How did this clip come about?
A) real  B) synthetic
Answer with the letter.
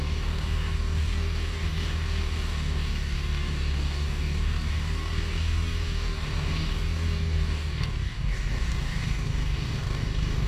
B